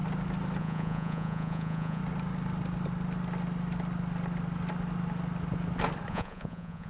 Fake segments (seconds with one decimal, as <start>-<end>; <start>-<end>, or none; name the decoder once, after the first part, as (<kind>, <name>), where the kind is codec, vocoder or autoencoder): 0.6-2.0 (vocoder, Vocos); 6.1-6.9